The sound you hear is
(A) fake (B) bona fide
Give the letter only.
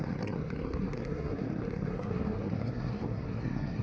A